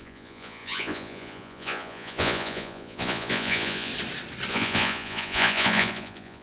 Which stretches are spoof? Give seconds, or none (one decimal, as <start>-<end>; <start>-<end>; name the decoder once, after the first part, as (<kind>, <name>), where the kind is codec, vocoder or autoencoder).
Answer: 0.0-3.9 (vocoder, Vocos); 4.5-6.4